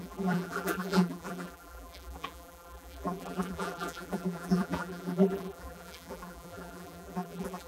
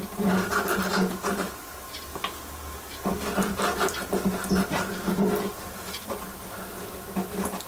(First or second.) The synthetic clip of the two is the first